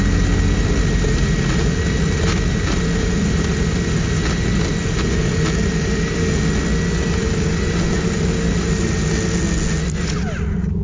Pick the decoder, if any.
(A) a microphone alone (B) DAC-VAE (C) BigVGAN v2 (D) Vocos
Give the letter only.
A